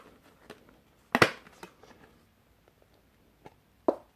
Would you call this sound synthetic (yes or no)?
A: no